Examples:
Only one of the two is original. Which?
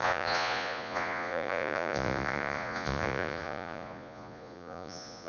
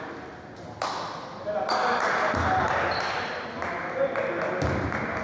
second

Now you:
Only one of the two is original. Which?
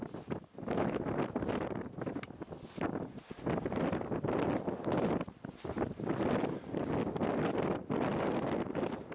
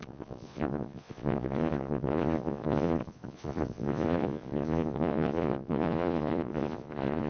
first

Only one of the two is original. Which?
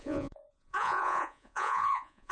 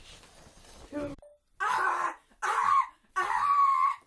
second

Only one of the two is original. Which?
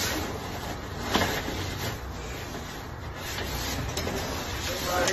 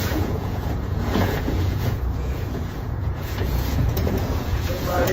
first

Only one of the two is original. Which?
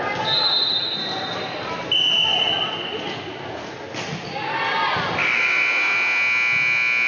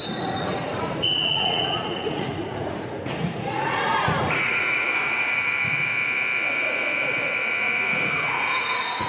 first